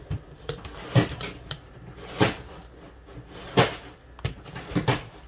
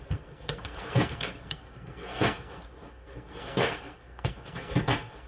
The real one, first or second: first